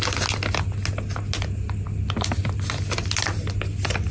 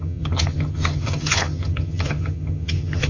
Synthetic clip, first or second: second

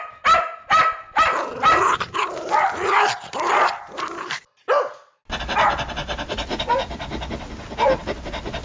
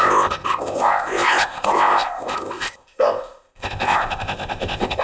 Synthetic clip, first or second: second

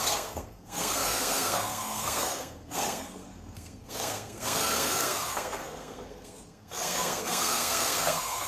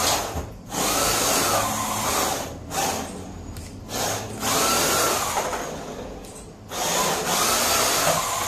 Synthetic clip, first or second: first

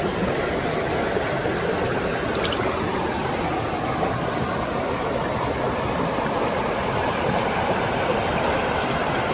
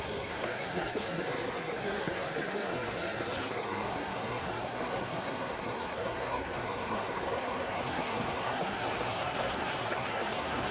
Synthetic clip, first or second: second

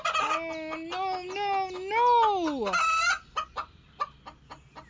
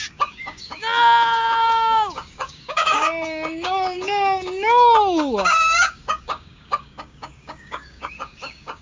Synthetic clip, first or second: second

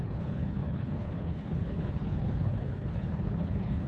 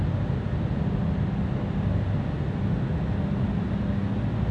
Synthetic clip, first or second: first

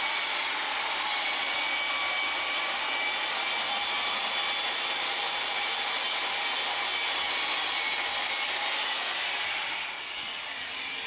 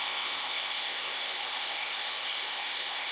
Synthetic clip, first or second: second